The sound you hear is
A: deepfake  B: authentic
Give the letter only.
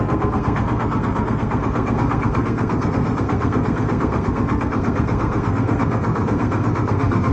A